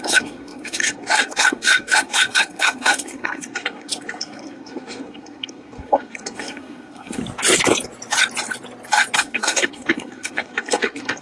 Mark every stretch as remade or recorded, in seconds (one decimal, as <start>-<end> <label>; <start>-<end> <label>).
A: 0.0-7.2 remade; 7.2-9.2 recorded; 9.2-11.2 remade